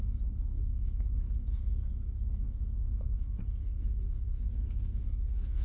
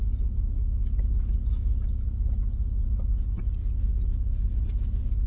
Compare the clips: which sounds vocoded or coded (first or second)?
first